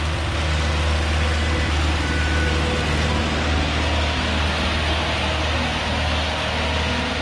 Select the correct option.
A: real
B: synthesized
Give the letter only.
A